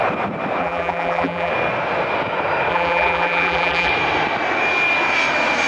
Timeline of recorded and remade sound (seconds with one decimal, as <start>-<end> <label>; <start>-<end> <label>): 0.0-0.6 recorded; 0.6-1.5 remade; 1.5-2.7 recorded; 2.7-3.9 remade; 3.9-5.7 recorded